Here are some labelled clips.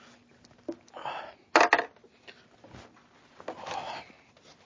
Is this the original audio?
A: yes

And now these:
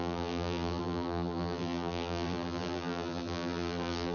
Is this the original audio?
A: no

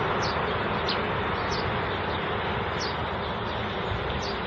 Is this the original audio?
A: yes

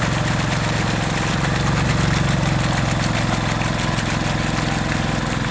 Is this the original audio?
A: yes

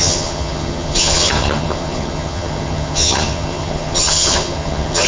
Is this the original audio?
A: no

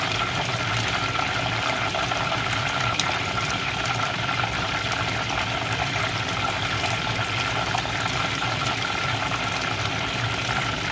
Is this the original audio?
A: no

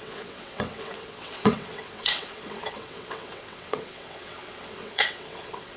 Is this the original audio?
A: no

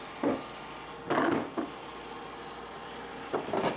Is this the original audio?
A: yes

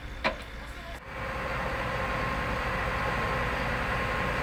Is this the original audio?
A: yes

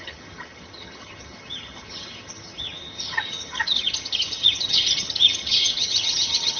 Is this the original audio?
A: no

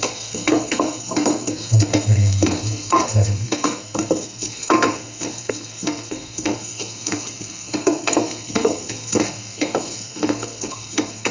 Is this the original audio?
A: no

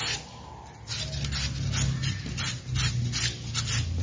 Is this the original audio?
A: yes